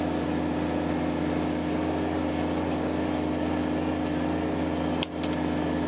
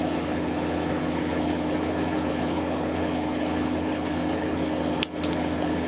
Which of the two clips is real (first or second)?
first